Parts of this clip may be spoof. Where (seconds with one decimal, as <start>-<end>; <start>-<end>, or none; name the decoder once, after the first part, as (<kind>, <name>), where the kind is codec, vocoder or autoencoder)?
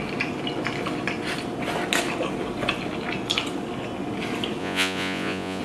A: 4.6-5.6 (vocoder, Vocos)